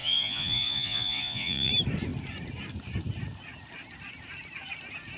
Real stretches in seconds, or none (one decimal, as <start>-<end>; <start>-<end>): 1.7-5.2